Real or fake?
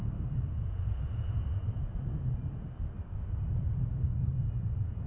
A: real